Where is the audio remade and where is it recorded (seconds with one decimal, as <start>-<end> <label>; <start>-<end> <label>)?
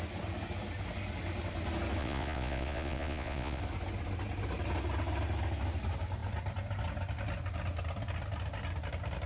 0.0-2.0 recorded; 2.0-3.6 remade; 3.6-9.3 recorded